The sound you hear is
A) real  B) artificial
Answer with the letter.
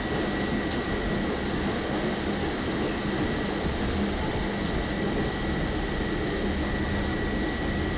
A